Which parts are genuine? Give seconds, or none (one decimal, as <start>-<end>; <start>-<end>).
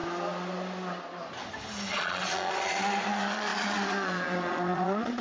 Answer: 0.0-1.9